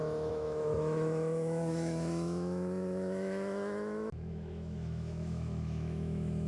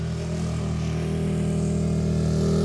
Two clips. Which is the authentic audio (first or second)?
second